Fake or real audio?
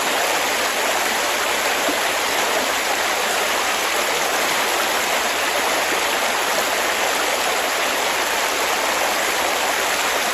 real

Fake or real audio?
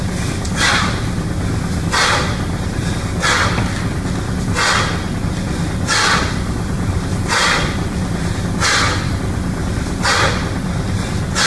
real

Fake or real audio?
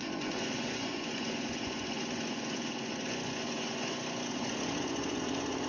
fake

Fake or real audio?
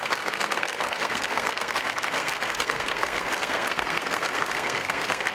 fake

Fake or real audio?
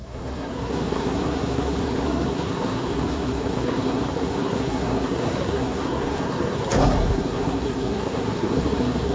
fake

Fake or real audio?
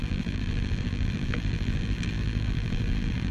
fake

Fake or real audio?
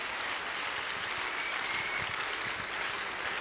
real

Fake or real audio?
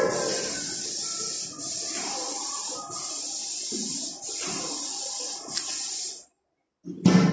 real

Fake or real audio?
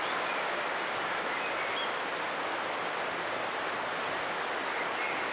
real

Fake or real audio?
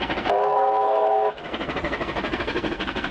fake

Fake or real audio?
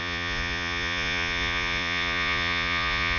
fake